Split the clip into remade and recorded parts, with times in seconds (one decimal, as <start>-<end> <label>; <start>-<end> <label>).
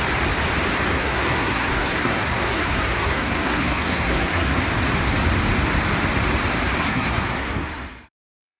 0.0-0.9 recorded; 0.9-4.6 remade; 4.6-6.8 recorded; 6.8-8.6 remade